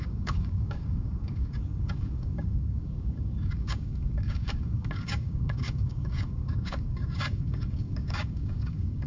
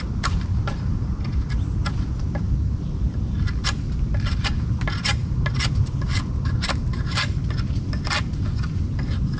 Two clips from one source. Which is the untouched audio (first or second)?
second